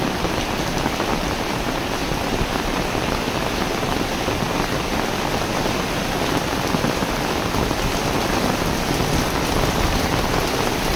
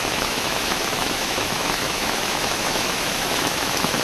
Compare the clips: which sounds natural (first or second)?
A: first